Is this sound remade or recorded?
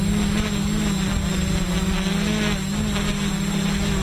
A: recorded